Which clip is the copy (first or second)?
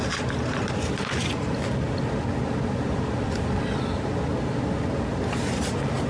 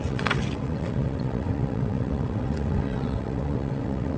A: second